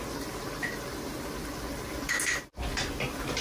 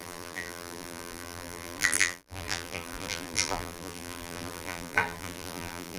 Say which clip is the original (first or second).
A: first